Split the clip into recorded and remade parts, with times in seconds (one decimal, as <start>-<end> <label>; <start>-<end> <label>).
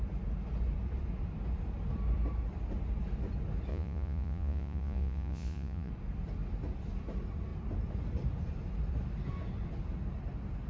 0.0-3.7 recorded; 3.7-5.9 remade; 5.9-10.7 recorded